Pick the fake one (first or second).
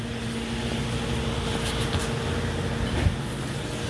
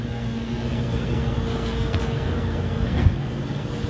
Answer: second